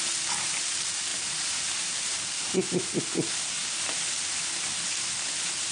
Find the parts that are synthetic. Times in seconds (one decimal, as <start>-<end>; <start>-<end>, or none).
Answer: 1.1-2.6